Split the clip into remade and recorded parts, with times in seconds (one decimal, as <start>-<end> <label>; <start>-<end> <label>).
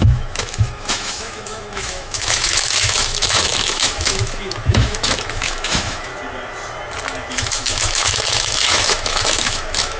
0.0-6.1 remade; 6.1-7.3 recorded; 7.3-10.0 remade